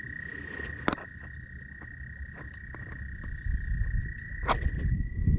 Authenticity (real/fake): real